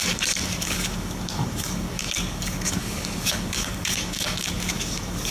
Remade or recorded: remade